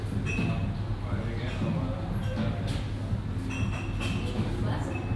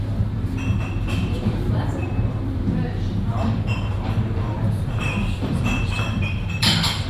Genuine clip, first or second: first